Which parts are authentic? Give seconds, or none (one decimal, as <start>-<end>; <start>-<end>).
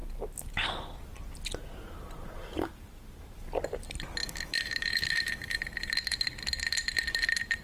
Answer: 0.0-4.2; 5.6-7.6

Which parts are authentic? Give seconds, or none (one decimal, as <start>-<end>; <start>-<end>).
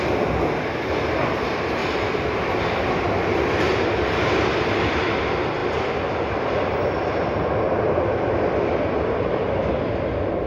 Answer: 0.0-1.8; 2.5-10.5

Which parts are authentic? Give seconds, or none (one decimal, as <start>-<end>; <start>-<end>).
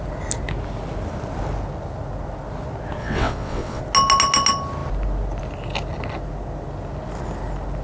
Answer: 0.0-3.0; 3.8-7.8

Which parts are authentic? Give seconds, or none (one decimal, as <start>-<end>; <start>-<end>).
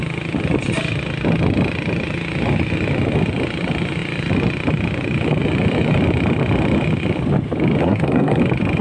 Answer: 0.0-7.8; 8.4-8.8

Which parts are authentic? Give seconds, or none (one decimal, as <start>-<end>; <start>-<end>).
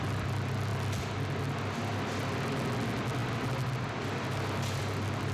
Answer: 0.0-5.3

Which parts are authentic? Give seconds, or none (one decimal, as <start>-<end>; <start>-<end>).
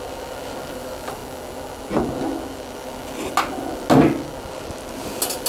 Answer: 0.0-5.5